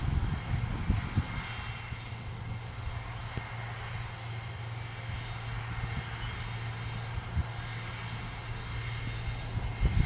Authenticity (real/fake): real